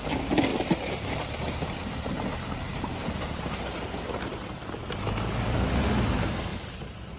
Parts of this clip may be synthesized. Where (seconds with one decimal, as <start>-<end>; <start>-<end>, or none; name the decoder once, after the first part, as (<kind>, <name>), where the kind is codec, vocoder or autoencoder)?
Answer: 0.5-4.7 (vocoder, BigVGAN v2); 6.5-7.2